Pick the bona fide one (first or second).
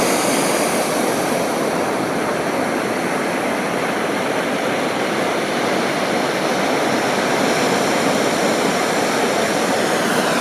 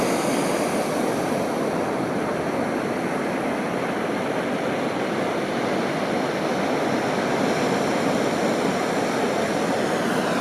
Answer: second